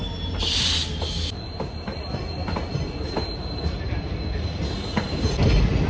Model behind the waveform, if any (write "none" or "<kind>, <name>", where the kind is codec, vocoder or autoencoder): none